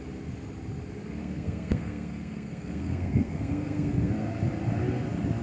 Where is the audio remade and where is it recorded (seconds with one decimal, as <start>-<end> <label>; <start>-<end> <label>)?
0.0-1.2 recorded; 1.2-4.3 remade; 4.3-5.4 recorded